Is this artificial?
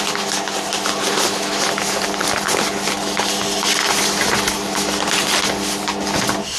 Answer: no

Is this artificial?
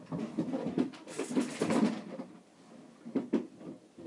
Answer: no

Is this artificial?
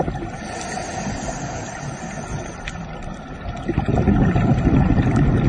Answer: no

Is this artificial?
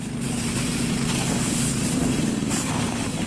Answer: no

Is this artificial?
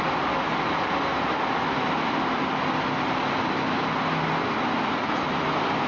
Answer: no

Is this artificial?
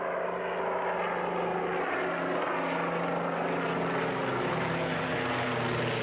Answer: no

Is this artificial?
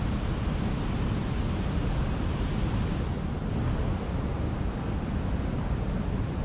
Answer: no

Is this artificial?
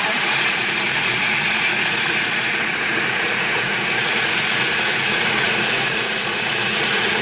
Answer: yes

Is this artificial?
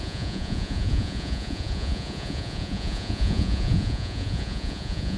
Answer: yes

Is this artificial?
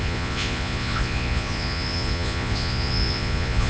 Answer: yes